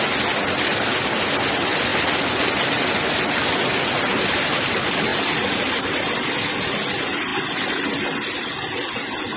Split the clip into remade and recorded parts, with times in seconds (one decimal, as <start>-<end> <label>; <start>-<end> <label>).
0.0-9.4 recorded